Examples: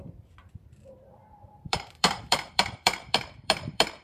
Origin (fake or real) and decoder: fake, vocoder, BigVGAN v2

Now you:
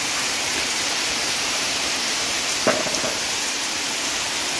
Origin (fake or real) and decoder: fake, vocoder, BigVGAN v2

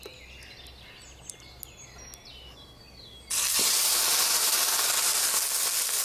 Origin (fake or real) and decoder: real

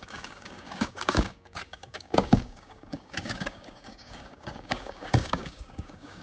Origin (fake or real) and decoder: fake, codec, DAC